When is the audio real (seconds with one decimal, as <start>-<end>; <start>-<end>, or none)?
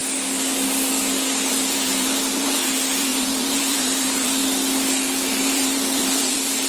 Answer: 0.0-1.5; 4.4-5.4